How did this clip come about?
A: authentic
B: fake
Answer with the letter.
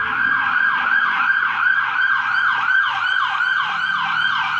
B